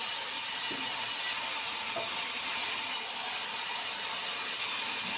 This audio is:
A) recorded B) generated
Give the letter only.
A